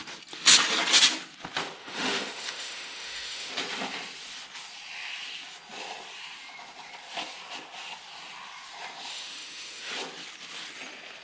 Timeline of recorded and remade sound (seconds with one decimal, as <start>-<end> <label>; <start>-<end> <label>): 0.0-1.8 recorded; 1.8-3.5 remade; 3.5-9.1 recorded; 9.1-9.9 remade; 9.9-11.2 recorded